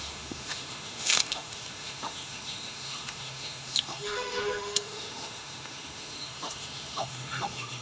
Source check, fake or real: fake